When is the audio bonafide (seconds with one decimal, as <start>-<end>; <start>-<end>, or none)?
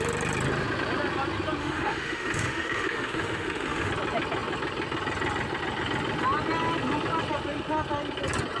0.0-1.6; 3.9-8.6